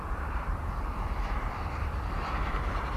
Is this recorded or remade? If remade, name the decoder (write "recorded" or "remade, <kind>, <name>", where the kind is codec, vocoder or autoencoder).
remade, vocoder, BigVGAN v2